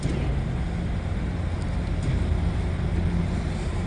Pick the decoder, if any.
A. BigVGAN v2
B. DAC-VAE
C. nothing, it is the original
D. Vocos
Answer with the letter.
C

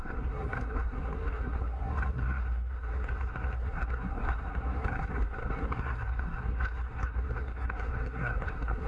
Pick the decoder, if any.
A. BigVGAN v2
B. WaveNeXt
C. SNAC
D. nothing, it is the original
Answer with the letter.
C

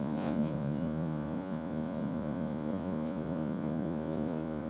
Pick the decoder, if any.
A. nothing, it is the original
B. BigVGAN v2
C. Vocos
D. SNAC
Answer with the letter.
C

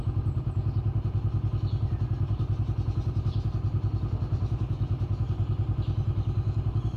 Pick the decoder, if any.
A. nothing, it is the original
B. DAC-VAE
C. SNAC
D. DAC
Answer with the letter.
A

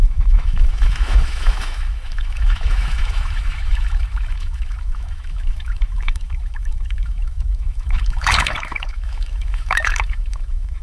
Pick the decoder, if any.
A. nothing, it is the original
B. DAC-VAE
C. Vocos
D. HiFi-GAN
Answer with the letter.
B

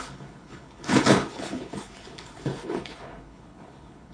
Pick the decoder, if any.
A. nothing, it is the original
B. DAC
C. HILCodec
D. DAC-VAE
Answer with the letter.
C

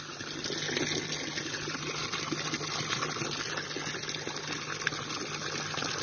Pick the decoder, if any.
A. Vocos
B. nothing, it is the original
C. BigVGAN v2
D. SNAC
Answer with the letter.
B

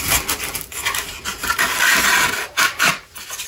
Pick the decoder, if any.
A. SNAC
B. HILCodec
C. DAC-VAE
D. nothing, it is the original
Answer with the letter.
D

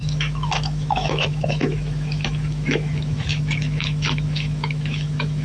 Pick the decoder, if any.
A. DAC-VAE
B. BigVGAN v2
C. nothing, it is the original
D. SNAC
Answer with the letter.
A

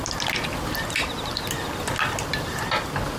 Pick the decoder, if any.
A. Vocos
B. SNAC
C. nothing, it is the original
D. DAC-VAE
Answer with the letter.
C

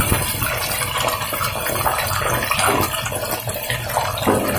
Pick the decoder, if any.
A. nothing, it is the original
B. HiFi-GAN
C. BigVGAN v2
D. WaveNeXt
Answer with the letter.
A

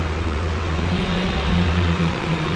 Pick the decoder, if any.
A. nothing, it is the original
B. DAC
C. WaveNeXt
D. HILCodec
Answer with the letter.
C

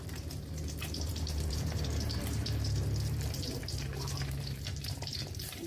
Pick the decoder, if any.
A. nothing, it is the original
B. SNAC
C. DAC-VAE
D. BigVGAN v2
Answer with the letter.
D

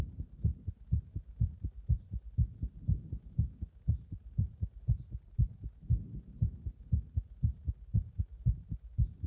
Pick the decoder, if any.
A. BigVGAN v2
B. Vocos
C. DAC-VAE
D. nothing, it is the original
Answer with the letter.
D